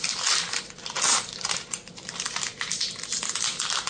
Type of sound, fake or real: real